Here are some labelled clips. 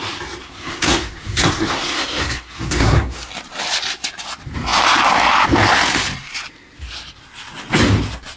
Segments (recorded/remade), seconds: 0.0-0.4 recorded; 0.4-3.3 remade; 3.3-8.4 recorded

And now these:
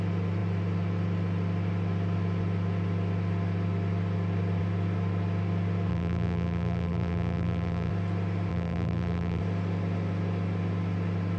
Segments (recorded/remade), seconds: 0.0-5.9 recorded; 5.9-7.9 remade; 7.9-8.5 recorded; 8.5-9.4 remade; 9.4-11.4 recorded

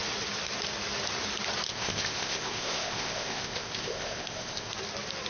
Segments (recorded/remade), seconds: 0.0-1.7 recorded; 1.7-4.7 remade; 4.7-5.3 recorded

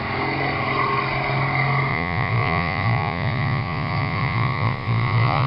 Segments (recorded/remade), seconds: 0.0-1.9 recorded; 1.9-5.5 remade

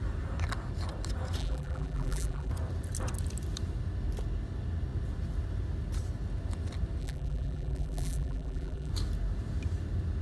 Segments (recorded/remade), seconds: 0.0-1.4 recorded; 1.4-2.5 remade; 2.5-7.0 recorded; 7.0-8.9 remade; 8.9-10.2 recorded